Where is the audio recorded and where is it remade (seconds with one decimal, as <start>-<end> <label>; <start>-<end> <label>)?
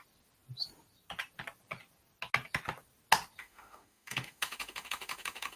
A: 0.0-3.4 recorded; 3.4-5.6 remade